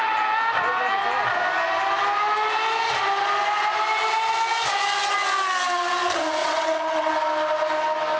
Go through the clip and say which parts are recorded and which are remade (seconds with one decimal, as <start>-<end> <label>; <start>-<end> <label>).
0.0-6.4 recorded; 6.4-7.1 remade; 7.1-8.2 recorded